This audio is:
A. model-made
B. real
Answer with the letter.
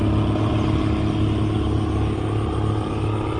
B